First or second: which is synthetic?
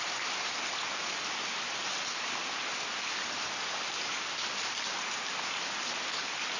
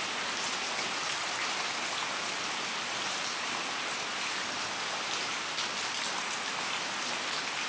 first